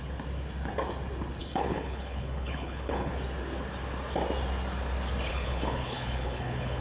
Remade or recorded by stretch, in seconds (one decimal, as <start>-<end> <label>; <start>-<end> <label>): 0.0-1.4 recorded; 1.4-3.1 remade; 3.1-5.3 recorded; 5.3-6.8 remade